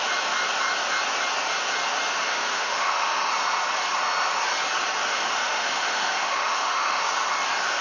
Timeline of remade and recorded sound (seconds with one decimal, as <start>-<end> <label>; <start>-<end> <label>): 0.0-2.2 recorded; 2.2-3.3 remade; 3.3-5.1 recorded; 5.1-7.0 remade; 7.0-7.8 recorded